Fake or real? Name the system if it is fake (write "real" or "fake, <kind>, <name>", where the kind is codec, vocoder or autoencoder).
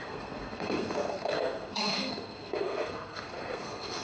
fake, codec, SNAC